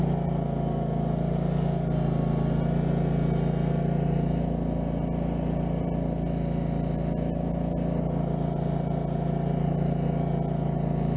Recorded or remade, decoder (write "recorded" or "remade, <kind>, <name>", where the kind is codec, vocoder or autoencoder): recorded